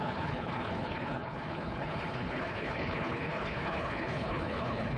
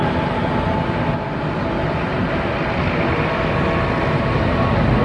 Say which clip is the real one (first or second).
second